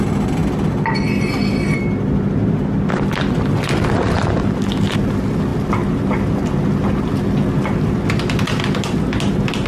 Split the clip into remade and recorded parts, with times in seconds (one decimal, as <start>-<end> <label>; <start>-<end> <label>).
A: 0.0-9.7 recorded